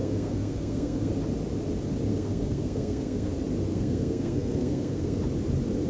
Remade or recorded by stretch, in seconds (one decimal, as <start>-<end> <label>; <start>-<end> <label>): 0.0-1.1 remade; 1.1-2.1 recorded; 2.1-3.3 remade; 3.3-3.7 recorded; 3.7-5.2 remade; 5.2-5.9 recorded